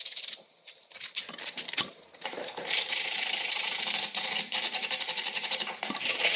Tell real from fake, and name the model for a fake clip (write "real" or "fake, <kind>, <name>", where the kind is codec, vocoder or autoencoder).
fake, vocoder, BigVGAN v2